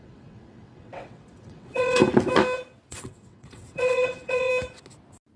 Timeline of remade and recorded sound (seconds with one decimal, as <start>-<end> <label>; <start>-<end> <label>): 0.0-2.0 remade; 2.0-2.9 recorded; 2.9-4.5 remade; 4.5-5.4 recorded